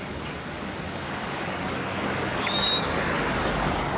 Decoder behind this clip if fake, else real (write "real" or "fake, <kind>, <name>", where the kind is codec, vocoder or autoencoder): fake, codec, DAC